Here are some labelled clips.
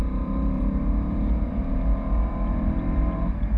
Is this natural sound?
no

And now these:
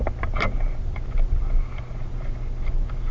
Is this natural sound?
yes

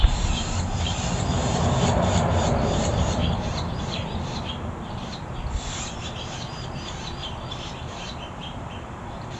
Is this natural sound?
no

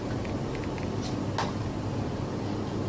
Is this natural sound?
yes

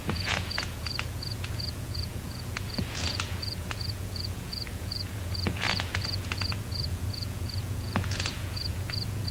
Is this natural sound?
no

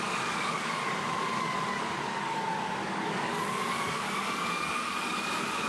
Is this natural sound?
no